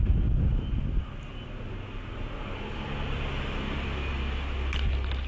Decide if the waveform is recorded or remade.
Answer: recorded